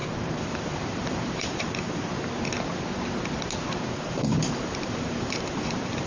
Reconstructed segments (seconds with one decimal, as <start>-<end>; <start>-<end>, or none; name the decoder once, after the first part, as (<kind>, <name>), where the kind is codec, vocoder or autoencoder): 0.0-2.1 (vocoder, BigVGAN v2); 3.9-6.1